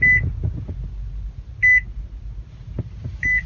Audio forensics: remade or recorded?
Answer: recorded